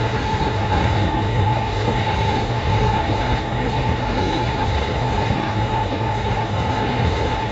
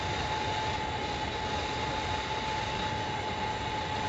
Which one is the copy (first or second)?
first